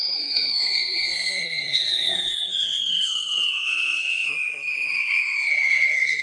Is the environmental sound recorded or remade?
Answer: remade